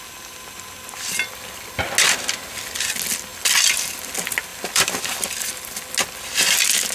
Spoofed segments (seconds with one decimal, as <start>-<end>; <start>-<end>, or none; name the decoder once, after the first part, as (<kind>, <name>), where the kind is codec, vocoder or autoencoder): 3.3-4.1 (vocoder, BigVGAN v2); 4.5-5.8